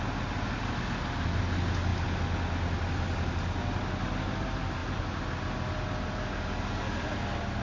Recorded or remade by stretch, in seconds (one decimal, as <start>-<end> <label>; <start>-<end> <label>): 0.0-7.6 recorded